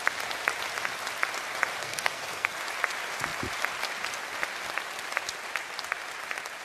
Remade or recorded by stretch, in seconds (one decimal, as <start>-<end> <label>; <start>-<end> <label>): 0.0-1.8 recorded; 1.8-2.6 remade; 2.6-6.6 recorded